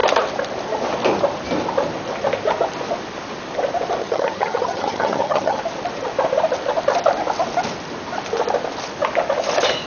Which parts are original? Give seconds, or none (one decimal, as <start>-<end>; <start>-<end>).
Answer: 0.0-4.0; 5.6-9.9